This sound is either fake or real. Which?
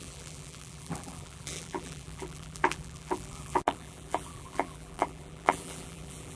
fake